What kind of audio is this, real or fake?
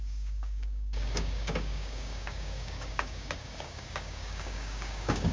fake